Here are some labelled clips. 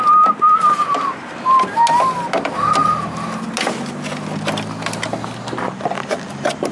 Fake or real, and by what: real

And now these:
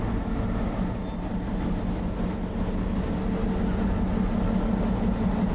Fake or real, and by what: real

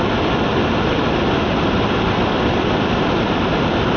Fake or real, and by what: real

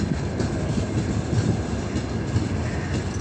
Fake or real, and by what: real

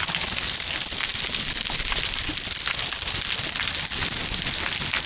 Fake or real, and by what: real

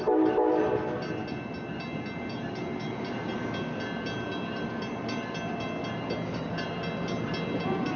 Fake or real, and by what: real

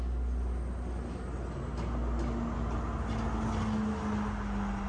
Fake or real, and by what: real